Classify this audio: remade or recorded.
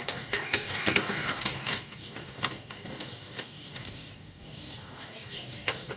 remade